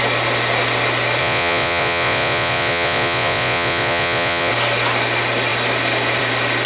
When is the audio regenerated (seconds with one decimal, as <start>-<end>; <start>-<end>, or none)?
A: 1.2-4.5